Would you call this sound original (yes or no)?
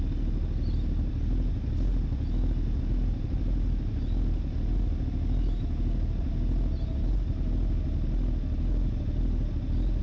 yes